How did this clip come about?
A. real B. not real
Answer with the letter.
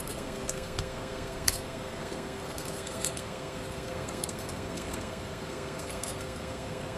B